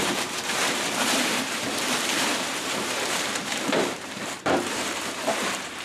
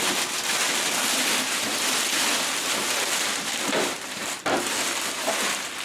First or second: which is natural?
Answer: second